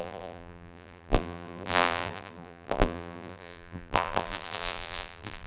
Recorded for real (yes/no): no